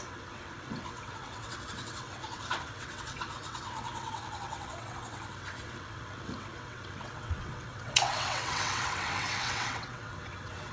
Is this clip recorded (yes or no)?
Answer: no